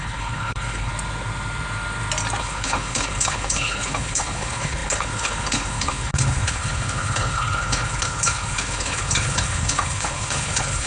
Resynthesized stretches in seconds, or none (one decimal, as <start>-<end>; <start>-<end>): 0.0-0.9; 2.4-10.9